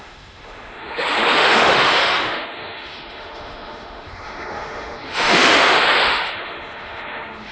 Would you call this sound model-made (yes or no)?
yes